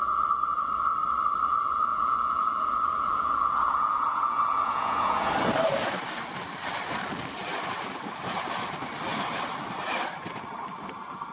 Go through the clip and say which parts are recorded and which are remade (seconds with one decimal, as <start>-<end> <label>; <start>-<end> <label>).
0.0-1.9 recorded; 1.9-5.3 remade; 5.3-11.3 recorded